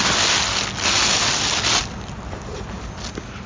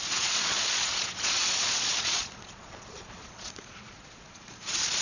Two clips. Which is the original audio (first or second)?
first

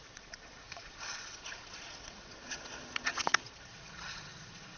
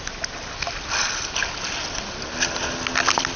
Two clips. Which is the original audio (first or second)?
second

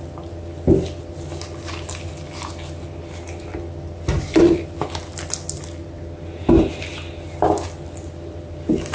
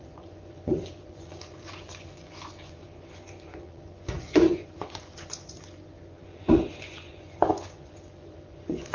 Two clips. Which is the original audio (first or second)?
first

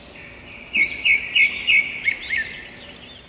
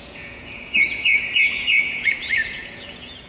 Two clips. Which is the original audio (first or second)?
first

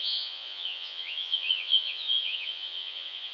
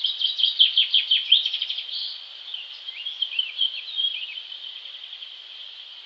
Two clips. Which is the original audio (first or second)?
second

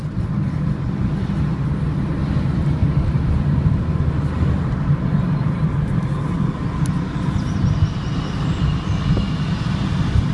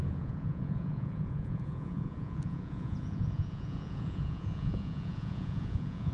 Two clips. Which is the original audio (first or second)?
first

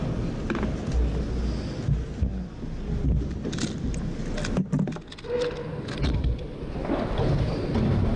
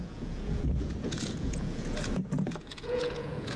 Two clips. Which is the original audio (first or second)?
first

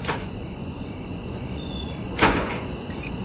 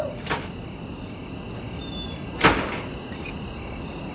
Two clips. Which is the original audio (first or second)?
second